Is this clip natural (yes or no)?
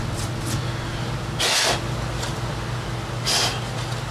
yes